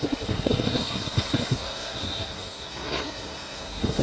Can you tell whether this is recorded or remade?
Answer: remade